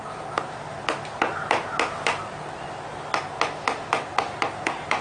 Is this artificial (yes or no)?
no